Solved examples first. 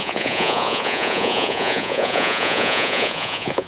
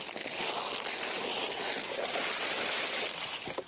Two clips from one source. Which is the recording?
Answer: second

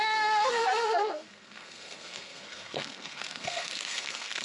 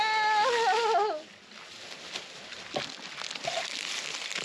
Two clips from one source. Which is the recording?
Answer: second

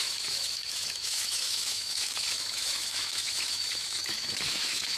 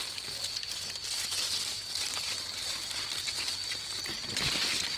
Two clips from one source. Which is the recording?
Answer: second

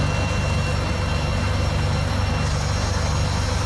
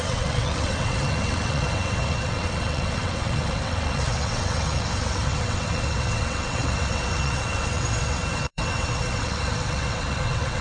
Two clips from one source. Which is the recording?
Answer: first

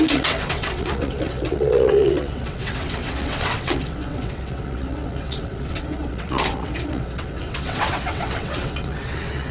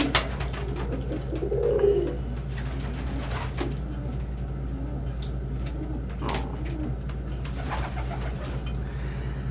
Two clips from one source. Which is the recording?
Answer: second